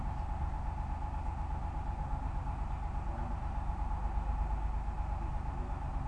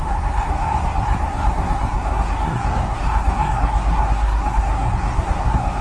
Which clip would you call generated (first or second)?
second